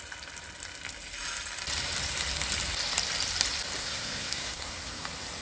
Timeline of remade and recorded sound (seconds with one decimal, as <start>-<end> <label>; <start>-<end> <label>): 0.0-3.8 recorded; 3.8-5.0 remade; 5.0-5.4 recorded

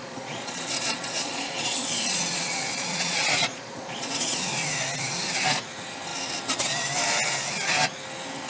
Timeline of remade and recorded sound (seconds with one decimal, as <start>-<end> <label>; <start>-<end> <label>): 0.0-4.4 remade; 4.4-8.5 recorded

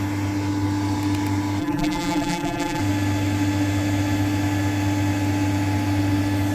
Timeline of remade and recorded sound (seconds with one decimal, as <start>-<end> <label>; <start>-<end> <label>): 0.0-1.6 recorded; 1.6-2.8 remade; 2.8-6.5 recorded

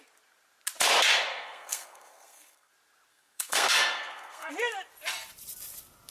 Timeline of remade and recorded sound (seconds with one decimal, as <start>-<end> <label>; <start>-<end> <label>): 0.0-1.3 recorded; 1.3-2.7 remade; 2.7-3.1 recorded; 3.1-4.5 remade; 4.5-6.1 recorded

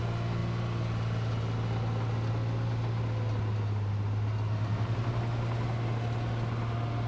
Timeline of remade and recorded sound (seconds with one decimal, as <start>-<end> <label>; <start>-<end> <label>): 0.0-7.1 recorded

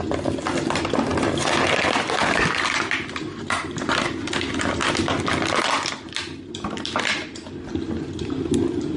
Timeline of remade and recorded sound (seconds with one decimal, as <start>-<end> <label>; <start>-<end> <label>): 0.0-9.0 recorded

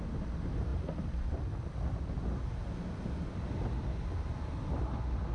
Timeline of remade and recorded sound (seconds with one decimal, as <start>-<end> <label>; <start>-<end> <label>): 0.0-5.3 recorded

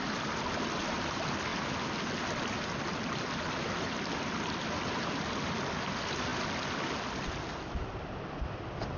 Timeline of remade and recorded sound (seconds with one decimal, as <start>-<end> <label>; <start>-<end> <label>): 0.0-9.0 recorded